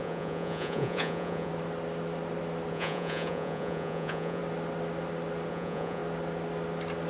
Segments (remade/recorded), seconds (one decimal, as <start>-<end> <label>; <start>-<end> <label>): 0.0-1.5 remade; 1.5-2.7 recorded; 2.7-4.4 remade; 4.4-5.5 recorded; 5.5-6.0 remade; 6.0-7.1 recorded